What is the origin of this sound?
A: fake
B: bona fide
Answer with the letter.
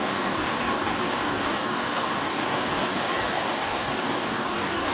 A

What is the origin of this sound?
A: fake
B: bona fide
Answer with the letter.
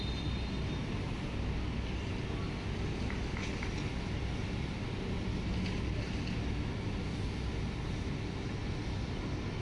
B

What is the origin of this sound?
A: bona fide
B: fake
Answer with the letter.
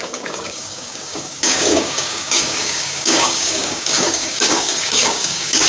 B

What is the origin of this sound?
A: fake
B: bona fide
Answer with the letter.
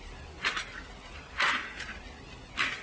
B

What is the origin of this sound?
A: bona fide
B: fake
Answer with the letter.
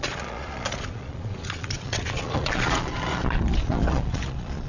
B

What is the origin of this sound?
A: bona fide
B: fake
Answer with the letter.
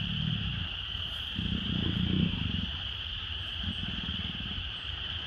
B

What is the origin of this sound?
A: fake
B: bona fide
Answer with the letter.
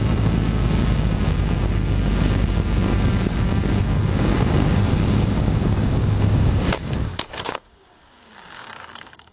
A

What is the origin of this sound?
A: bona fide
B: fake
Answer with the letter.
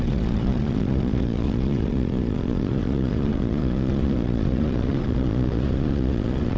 B